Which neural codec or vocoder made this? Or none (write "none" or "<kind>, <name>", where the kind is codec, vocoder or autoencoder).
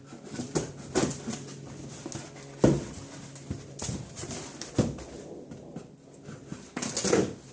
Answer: none